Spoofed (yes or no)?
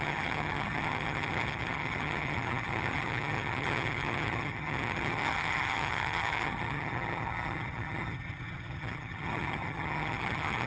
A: yes